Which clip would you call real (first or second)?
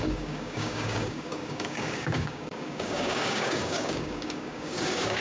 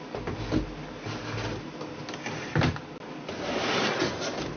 second